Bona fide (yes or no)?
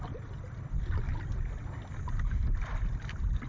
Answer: yes